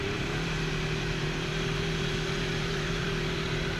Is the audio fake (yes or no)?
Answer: yes